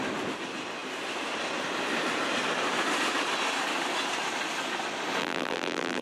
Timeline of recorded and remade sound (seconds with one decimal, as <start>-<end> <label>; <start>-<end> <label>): 0.0-5.2 recorded; 5.2-6.0 remade